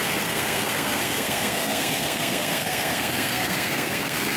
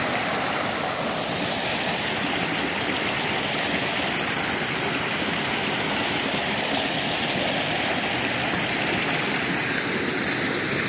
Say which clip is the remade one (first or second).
first